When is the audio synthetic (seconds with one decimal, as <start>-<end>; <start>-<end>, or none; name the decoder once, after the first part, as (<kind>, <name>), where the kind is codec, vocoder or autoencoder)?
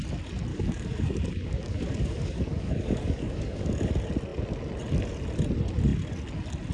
0.5-3.9 (codec, DAC)